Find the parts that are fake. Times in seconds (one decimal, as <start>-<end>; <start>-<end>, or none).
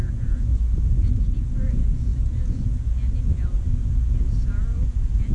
0.0-0.5; 1.0-5.3